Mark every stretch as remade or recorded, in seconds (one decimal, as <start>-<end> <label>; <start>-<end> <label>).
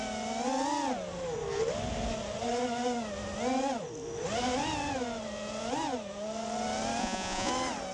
0.0-7.0 recorded; 7.0-7.5 remade; 7.5-7.9 recorded